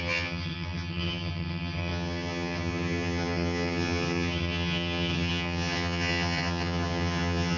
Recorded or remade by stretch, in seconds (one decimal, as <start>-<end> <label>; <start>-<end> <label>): 0.0-7.6 remade

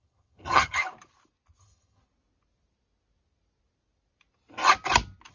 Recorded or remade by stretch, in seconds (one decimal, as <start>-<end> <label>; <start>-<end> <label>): 0.0-0.8 remade; 0.8-1.6 recorded; 1.6-2.0 remade; 2.0-5.3 recorded

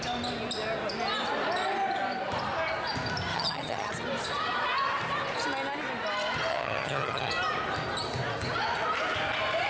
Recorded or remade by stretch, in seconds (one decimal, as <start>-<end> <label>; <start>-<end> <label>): 0.0-3.3 recorded; 3.3-3.9 remade; 3.9-6.5 recorded; 6.5-7.3 remade; 7.3-9.7 recorded

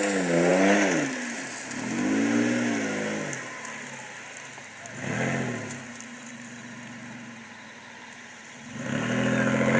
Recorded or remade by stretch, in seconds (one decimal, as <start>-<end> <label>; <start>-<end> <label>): 0.0-9.8 recorded